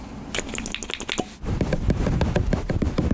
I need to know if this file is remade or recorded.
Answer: recorded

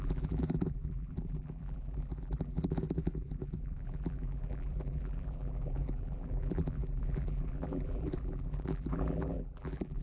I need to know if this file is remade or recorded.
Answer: remade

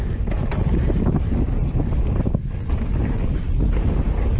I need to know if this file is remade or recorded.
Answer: recorded